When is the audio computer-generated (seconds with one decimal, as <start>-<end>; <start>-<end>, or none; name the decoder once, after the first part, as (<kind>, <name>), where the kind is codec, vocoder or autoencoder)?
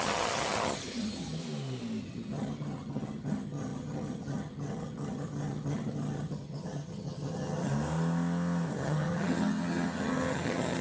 0.0-1.4 (vocoder, HiFi-GAN); 2.0-7.7; 8.7-10.8